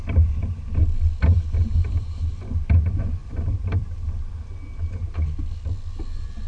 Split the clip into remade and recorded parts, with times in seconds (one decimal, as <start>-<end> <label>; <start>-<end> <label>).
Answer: 0.0-1.6 recorded; 1.6-2.3 remade; 2.3-3.2 recorded; 3.2-4.3 remade; 4.3-6.5 recorded